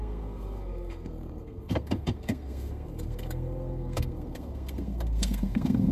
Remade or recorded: remade